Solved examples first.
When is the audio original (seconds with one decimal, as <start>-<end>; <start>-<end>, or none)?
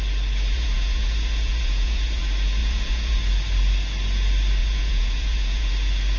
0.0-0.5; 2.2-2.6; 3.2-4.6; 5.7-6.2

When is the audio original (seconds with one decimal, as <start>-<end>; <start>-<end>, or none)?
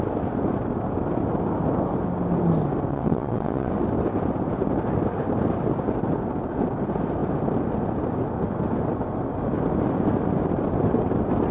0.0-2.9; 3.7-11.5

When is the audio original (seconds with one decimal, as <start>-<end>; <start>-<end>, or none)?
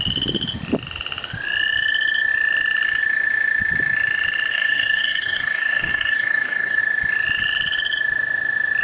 0.0-4.5; 6.8-8.8